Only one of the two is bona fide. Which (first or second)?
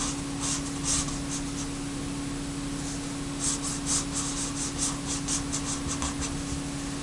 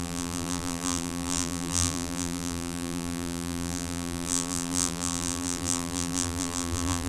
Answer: first